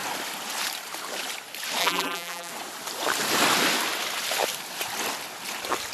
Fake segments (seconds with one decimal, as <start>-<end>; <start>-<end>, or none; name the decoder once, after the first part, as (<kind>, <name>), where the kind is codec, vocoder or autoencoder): 1.8-2.5 (vocoder, BigVGAN v2)